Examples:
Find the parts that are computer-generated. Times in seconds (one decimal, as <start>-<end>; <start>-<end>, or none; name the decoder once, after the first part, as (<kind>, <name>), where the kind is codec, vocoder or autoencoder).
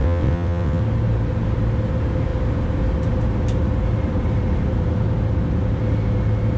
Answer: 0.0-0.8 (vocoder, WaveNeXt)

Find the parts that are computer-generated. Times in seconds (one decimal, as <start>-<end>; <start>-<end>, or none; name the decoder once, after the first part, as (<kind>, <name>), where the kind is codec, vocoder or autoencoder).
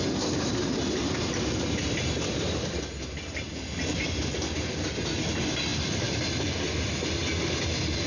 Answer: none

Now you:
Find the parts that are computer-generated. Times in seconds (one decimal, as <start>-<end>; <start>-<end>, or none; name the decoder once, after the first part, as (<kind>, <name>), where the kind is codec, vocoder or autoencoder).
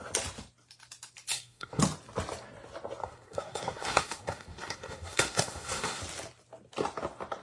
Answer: 1.3-1.8 (codec, SNAC); 3.0-6.0